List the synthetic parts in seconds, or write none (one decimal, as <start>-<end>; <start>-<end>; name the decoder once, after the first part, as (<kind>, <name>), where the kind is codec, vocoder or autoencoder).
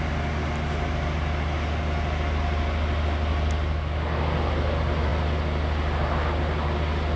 none